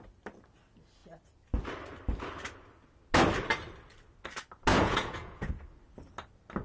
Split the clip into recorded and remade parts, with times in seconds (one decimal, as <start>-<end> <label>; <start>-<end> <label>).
0.0-4.7 recorded; 4.7-5.5 remade; 5.5-6.6 recorded